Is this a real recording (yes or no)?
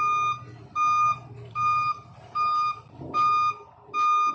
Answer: yes